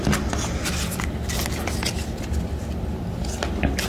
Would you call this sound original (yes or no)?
yes